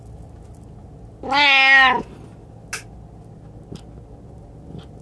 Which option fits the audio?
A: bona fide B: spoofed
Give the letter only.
A